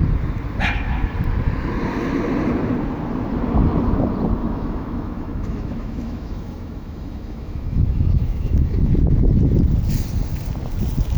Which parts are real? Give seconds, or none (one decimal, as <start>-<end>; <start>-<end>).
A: 0.0-4.4; 8.9-11.2